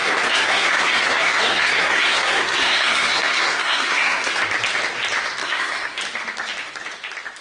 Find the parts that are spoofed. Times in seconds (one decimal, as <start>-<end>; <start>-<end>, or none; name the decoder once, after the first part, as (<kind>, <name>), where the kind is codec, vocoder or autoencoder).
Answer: 0.0-4.4 (codec, SNAC); 5.4-6.0